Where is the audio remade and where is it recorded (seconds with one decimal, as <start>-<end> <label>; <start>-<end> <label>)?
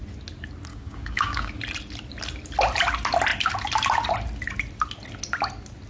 0.0-0.7 recorded; 0.7-1.5 remade; 1.5-5.9 recorded